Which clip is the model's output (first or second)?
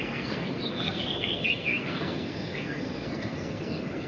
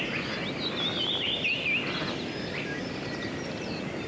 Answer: first